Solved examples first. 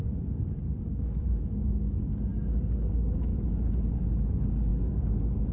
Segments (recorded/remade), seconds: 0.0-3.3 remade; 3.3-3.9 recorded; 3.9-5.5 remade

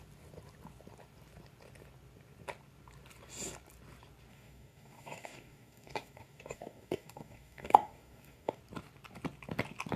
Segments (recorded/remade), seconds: 0.0-4.3 recorded; 4.3-8.6 remade; 8.6-10.0 recorded

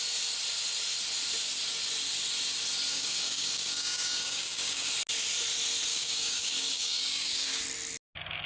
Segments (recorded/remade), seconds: 0.0-2.9 recorded; 2.9-4.9 remade; 4.9-5.9 recorded; 5.9-7.6 remade; 7.6-8.5 recorded